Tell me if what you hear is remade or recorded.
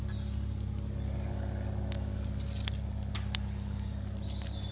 recorded